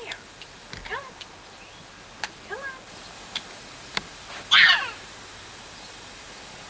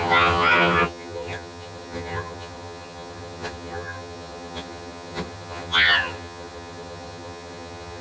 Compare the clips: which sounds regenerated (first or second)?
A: second